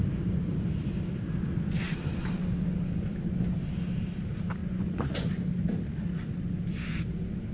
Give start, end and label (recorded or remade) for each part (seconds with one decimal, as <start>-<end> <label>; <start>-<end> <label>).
0.0-4.6 recorded; 4.6-5.3 remade; 5.3-7.5 recorded